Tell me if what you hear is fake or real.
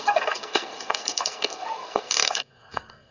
fake